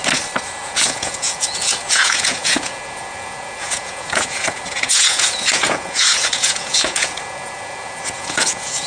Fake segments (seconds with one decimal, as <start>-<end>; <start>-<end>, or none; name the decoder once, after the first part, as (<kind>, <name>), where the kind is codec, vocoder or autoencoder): 0.6-8.9 (vocoder, Vocos)